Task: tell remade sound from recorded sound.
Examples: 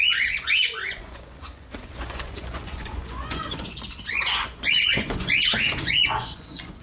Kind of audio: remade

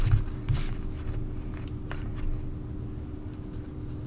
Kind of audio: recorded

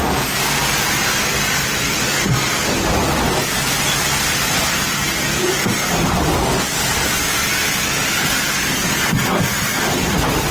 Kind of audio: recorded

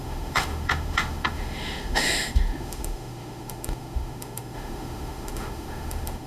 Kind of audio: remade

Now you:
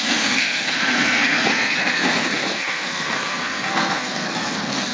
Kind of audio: remade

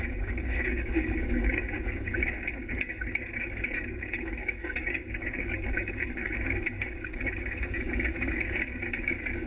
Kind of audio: remade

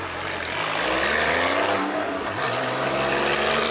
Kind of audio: recorded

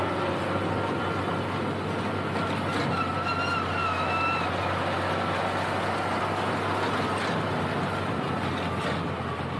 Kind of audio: recorded